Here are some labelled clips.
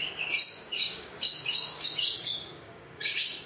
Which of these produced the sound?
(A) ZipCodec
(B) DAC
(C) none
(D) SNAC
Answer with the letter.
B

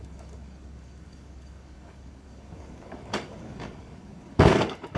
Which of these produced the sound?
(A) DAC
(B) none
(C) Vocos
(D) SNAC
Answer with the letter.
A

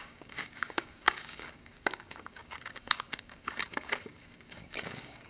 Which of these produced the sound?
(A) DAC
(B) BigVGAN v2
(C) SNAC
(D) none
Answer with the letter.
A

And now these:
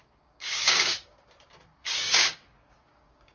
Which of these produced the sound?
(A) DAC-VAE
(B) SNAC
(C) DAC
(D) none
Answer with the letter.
C